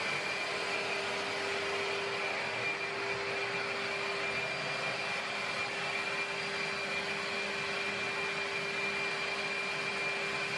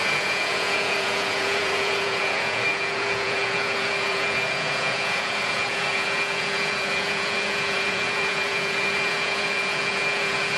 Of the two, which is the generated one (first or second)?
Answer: second